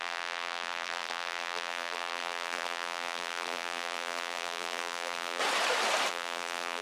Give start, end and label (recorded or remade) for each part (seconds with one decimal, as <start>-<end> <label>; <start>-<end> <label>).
0.0-5.4 remade; 5.4-6.1 recorded; 6.1-6.8 remade